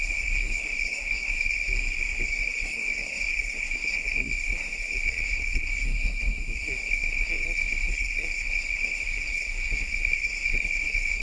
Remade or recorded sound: remade